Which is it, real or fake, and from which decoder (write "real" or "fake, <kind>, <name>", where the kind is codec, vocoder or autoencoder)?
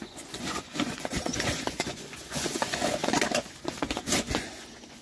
fake, vocoder, Vocos